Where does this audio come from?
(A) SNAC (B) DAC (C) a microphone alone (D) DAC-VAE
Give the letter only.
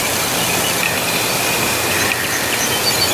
C